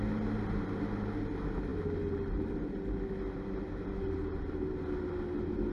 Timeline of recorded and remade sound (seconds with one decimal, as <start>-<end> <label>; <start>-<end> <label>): 0.0-5.7 recorded